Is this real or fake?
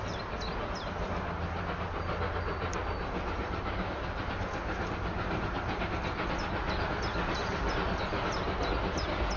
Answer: real